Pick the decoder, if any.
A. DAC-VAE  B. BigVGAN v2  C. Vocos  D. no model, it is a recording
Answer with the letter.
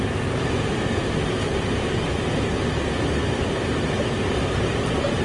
B